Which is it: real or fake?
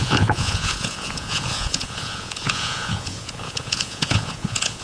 fake